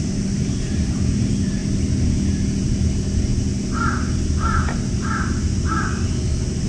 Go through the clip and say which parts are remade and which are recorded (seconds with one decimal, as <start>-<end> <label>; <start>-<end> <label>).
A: 0.0-1.6 remade; 1.6-2.6 recorded; 2.6-3.3 remade; 3.3-4.9 recorded; 4.9-6.7 remade